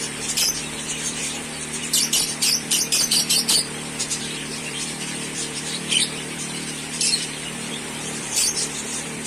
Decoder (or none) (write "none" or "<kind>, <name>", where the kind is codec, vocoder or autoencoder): vocoder, BigVGAN v2